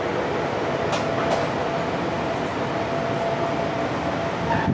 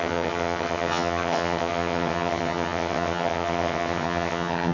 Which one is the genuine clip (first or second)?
first